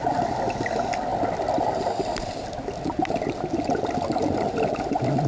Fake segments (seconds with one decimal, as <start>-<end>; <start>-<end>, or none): none